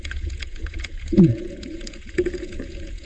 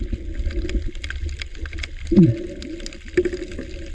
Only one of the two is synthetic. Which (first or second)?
first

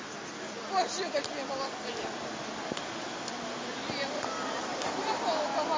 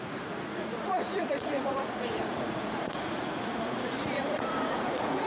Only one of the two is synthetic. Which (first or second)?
second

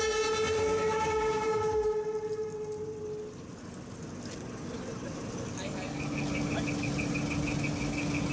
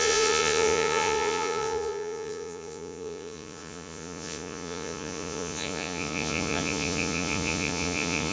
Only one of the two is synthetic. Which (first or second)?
second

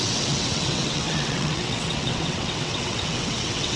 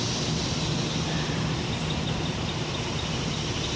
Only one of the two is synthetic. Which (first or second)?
first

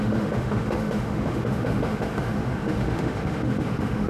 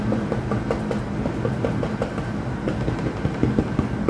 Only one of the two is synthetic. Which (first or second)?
first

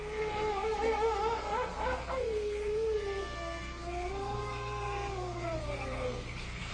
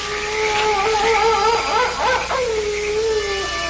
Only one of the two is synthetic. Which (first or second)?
first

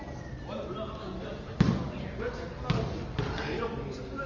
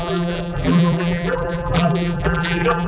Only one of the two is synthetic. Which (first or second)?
second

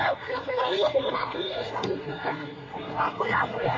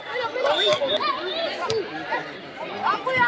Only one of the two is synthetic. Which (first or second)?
first